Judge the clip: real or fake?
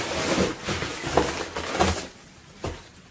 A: real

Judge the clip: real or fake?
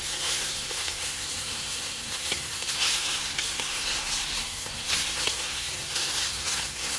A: fake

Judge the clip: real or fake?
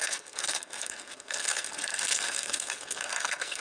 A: fake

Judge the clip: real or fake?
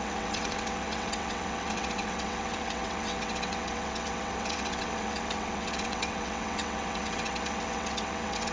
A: fake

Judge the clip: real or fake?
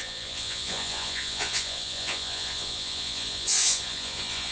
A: fake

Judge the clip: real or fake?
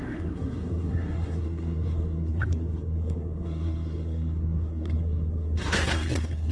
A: fake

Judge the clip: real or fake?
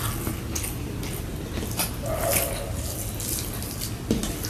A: real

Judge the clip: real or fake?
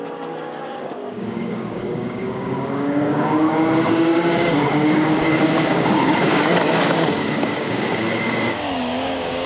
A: fake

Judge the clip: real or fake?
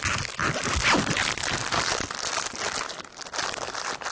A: real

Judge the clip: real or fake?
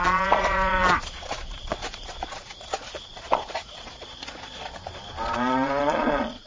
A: fake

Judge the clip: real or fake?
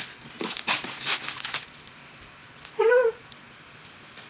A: real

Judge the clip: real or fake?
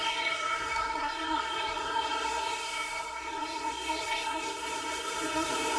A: fake